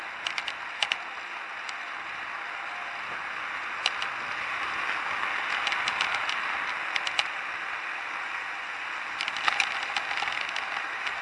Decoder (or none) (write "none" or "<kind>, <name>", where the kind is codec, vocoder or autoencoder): none